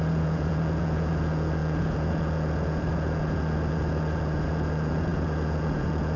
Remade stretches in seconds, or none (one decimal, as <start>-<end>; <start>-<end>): 0.0-6.2